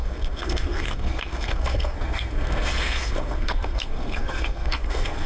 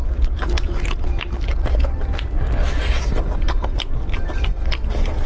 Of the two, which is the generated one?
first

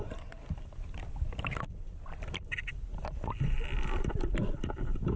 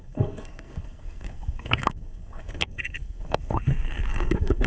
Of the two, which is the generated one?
second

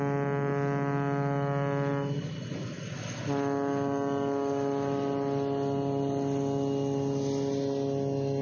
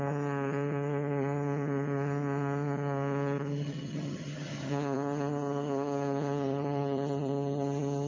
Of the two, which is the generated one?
second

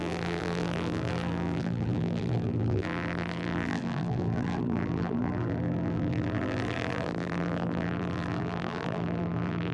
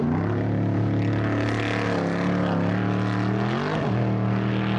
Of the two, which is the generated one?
first